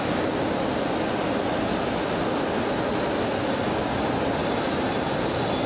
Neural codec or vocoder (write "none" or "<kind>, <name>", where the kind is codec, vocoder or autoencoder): none